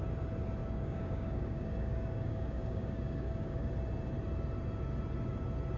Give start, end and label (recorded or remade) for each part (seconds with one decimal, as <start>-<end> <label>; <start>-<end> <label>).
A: 0.0-0.6 recorded; 0.6-3.7 remade; 3.7-5.8 recorded